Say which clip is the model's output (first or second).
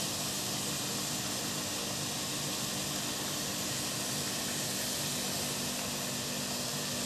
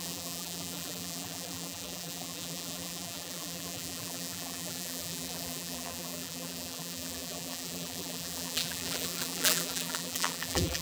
second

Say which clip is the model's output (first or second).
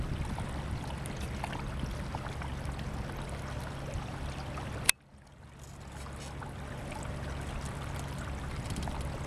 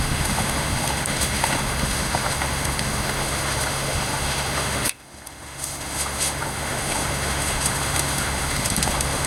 second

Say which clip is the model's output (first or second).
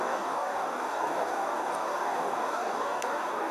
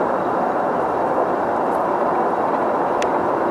first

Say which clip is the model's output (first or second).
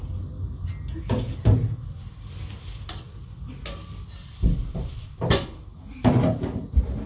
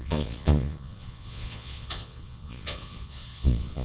second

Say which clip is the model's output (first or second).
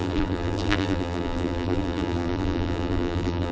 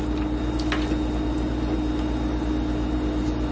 first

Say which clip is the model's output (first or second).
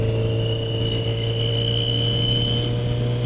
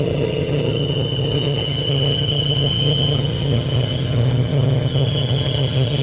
second